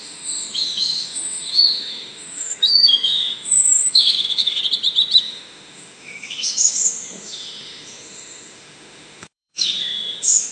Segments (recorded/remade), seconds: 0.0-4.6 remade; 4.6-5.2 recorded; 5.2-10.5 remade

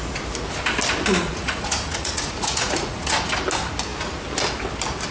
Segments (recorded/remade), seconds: 0.0-1.3 recorded; 1.3-3.1 remade; 3.1-5.1 recorded